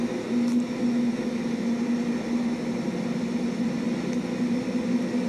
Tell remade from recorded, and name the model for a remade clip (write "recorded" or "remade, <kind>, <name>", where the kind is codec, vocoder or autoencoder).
recorded